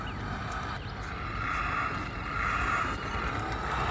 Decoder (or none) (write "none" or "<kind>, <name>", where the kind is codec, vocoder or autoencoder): none